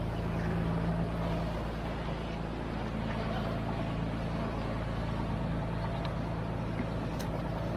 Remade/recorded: recorded